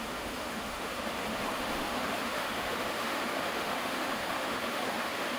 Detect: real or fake fake